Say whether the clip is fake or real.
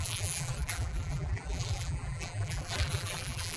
fake